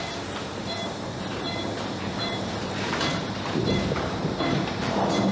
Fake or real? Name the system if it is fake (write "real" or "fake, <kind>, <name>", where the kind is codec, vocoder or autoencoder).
fake, vocoder, BigVGAN v2